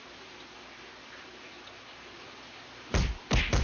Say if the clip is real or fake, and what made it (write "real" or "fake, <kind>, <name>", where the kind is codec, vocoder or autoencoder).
real